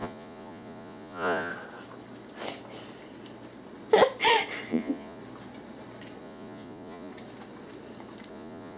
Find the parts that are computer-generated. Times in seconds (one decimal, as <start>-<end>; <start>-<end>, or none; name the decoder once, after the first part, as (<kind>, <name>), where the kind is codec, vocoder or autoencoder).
0.0-1.5 (vocoder, Vocos); 4.7-5.2; 6.2-7.1; 8.3-8.8